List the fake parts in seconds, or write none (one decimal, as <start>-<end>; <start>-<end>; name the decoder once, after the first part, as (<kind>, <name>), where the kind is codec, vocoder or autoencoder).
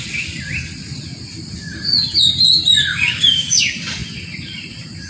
2.9-3.6 (codec, DAC)